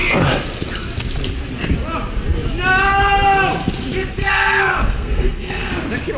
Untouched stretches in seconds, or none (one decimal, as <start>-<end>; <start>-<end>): 0.0-4.2; 5.7-6.2